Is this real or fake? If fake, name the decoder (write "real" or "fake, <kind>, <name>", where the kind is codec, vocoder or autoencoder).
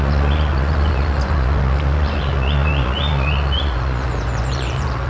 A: fake, vocoder, Vocos